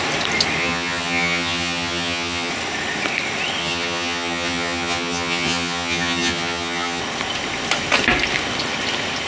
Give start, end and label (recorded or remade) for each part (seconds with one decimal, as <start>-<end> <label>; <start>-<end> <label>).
0.0-0.6 recorded; 0.6-2.5 remade; 2.5-3.6 recorded; 3.6-7.0 remade; 7.0-9.3 recorded

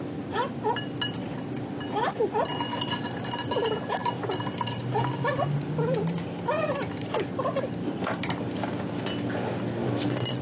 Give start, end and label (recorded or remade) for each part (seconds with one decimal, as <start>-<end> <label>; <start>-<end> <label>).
0.0-10.4 recorded

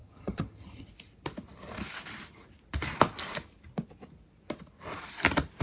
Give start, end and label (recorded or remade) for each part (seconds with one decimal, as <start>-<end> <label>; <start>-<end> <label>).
0.0-0.9 remade; 0.9-5.6 recorded

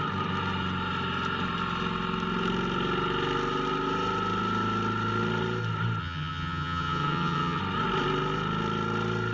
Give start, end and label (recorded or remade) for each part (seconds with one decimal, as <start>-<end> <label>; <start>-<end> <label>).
0.0-6.0 recorded; 6.0-7.6 remade; 7.6-9.3 recorded

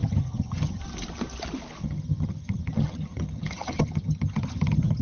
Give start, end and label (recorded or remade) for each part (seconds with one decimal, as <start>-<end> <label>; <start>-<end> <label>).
0.0-0.8 remade; 0.8-1.8 recorded; 1.8-5.0 remade

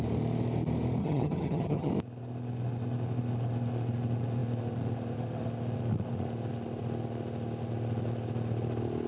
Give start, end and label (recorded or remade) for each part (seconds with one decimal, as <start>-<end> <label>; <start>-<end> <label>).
0.0-1.0 recorded; 1.0-1.9 remade; 1.9-9.1 recorded